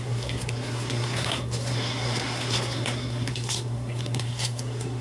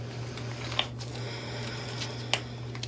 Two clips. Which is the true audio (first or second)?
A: second